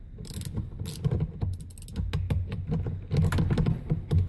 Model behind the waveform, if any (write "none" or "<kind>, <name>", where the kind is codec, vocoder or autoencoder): none